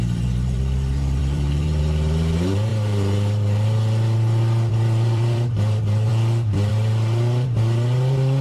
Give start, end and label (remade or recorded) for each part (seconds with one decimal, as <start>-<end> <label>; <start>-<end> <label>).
0.0-6.1 remade; 6.1-6.7 recorded; 6.7-8.4 remade